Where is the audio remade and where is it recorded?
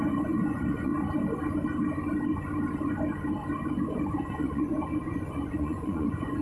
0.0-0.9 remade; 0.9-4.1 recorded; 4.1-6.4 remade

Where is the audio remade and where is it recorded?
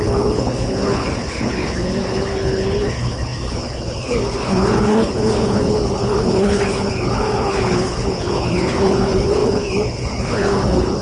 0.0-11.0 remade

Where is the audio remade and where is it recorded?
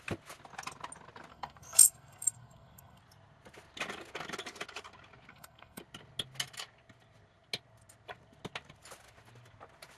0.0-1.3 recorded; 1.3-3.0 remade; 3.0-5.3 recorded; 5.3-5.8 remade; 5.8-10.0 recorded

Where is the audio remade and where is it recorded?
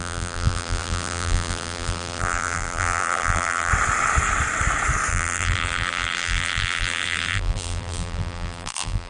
0.0-3.7 remade; 3.7-5.1 recorded; 5.1-9.1 remade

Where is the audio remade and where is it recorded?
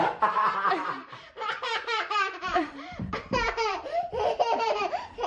0.0-0.8 recorded; 0.8-3.1 remade; 3.1-3.7 recorded; 3.7-4.8 remade; 4.8-5.3 recorded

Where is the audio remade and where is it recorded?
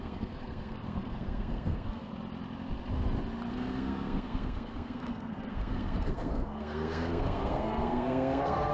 0.0-2.1 remade; 2.1-3.5 recorded; 3.5-8.7 remade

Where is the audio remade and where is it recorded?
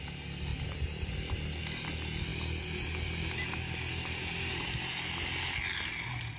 0.0-6.4 recorded